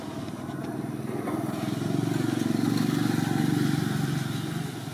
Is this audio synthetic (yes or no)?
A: no